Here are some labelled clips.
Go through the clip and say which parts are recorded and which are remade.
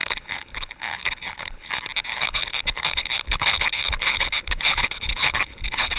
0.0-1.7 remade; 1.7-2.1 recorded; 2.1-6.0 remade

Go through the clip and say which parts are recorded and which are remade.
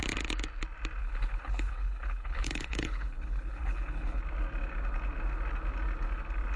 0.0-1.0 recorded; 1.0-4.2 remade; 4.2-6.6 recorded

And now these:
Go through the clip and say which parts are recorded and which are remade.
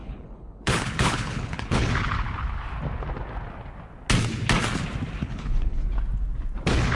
0.0-1.9 remade; 1.9-5.2 recorded; 5.2-5.9 remade; 5.9-6.9 recorded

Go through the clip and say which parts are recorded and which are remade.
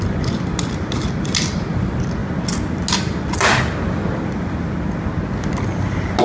0.0-6.2 recorded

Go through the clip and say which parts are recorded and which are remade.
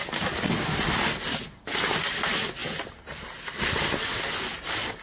0.0-5.0 recorded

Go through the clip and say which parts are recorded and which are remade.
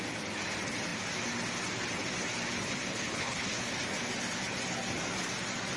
0.0-2.9 recorded; 2.9-3.6 remade; 3.6-5.8 recorded